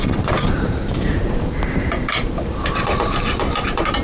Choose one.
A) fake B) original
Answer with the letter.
A